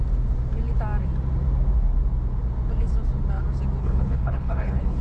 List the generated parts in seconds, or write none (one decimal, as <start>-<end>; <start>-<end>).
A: 3.8-5.0